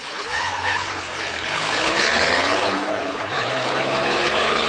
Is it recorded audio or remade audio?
remade